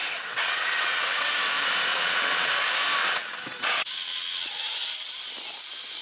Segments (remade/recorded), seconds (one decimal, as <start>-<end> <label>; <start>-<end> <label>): 0.0-1.3 remade; 1.3-1.9 recorded; 1.9-2.5 remade; 2.5-3.0 recorded; 3.0-4.5 remade; 4.5-6.0 recorded